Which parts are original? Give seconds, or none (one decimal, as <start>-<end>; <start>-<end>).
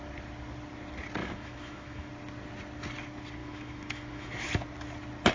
0.0-1.2; 2.1-3.4; 4.3-5.3